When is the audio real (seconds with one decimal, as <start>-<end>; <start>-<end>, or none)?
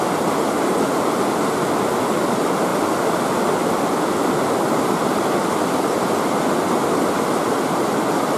0.0-8.4